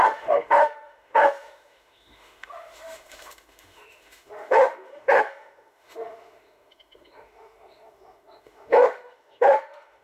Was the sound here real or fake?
fake